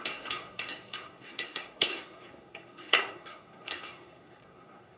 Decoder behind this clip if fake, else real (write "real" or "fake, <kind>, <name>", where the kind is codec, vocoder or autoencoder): fake, codec, SNAC